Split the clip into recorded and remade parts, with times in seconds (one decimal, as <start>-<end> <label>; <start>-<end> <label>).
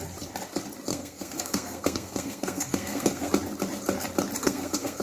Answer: 0.0-0.9 recorded; 0.9-3.3 remade; 3.3-4.4 recorded; 4.4-5.0 remade